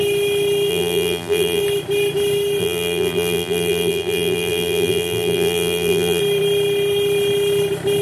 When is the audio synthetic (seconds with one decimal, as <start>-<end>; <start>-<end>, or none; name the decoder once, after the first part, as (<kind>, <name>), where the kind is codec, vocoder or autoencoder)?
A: 0.7-1.6 (vocoder, BigVGAN v2); 2.6-6.2